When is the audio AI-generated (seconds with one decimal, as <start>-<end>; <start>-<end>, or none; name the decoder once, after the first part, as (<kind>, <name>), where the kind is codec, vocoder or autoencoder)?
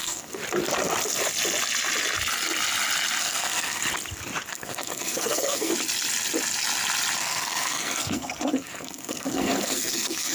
0.0-0.4 (codec, SNAC); 3.2-3.8; 4.5-5.7; 7.2-10.3